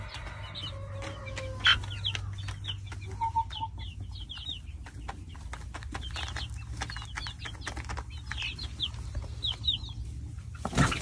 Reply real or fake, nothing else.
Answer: real